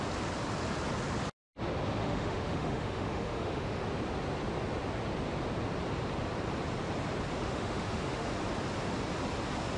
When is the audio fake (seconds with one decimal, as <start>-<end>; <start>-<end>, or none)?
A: 2.0-3.8; 7.4-8.3